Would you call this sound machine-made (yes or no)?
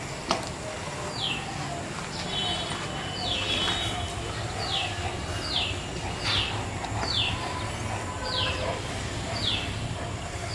no